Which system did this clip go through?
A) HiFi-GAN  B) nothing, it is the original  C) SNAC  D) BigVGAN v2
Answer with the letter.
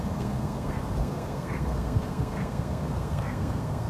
C